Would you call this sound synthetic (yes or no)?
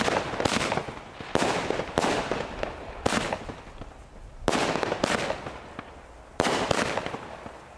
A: no